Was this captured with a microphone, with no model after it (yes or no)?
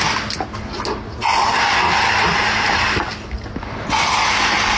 yes